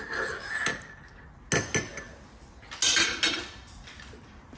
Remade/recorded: recorded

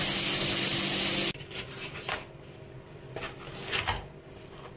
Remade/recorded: recorded